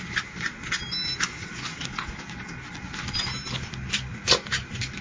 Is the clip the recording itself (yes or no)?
yes